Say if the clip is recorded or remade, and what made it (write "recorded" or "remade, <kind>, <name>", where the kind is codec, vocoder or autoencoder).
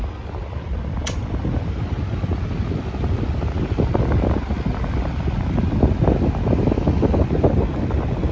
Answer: recorded